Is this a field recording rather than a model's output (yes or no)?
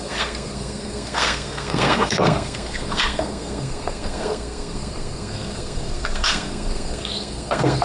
no